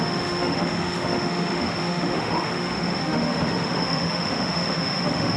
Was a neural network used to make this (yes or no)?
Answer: yes